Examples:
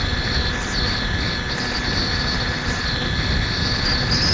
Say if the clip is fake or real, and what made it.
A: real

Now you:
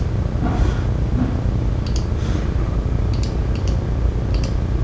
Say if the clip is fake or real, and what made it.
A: real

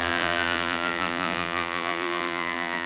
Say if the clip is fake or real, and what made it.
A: fake, vocoder, BigVGAN v2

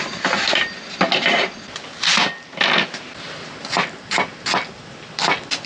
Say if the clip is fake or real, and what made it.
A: real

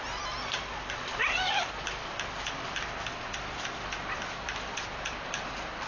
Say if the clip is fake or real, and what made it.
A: fake, vocoder, BigVGAN v2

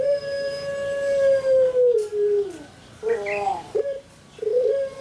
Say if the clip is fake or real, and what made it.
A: fake, vocoder, BigVGAN v2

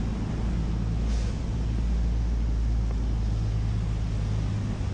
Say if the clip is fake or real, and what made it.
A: real